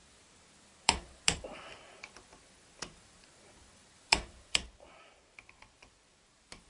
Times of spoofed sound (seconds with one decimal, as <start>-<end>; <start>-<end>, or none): 0.0-6.7